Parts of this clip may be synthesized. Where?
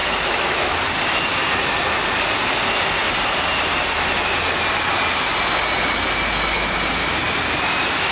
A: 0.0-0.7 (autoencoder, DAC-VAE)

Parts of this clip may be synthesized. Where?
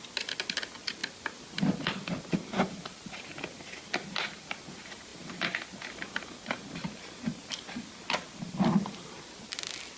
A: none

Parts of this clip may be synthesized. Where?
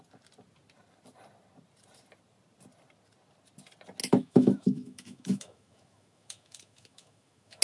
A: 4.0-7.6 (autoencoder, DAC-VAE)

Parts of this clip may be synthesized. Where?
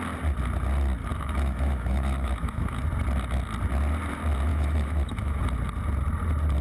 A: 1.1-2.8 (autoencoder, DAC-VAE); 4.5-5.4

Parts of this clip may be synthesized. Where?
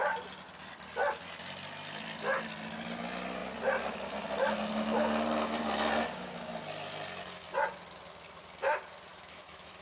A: 9.1-9.8 (autoencoder, DAC-VAE)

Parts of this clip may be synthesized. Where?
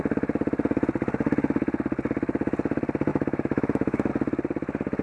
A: 3.1-4.1 (autoencoder, DAC-VAE)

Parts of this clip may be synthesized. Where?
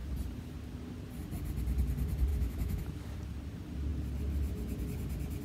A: 2.3-2.8 (autoencoder, DAC-VAE)